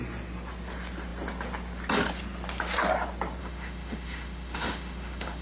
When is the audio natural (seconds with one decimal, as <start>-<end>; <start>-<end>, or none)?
0.0-3.4